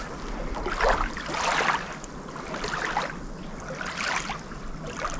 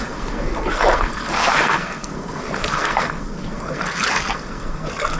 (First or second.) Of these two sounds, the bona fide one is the first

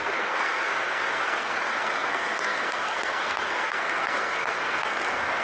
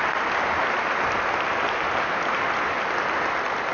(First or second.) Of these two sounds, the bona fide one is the second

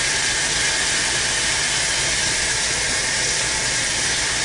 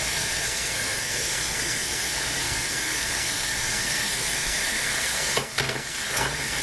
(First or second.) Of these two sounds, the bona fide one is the first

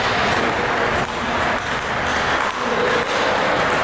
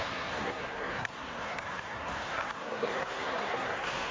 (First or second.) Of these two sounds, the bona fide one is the first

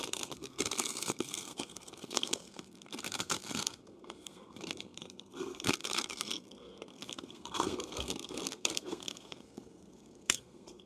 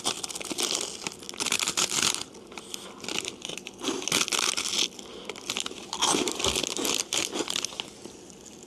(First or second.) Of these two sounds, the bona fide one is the second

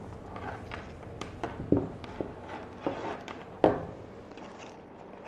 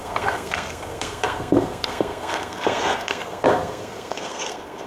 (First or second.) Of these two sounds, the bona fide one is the first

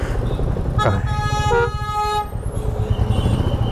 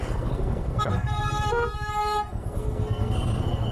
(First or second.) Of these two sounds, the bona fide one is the first